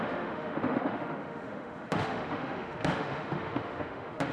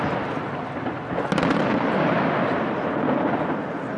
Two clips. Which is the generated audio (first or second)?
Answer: first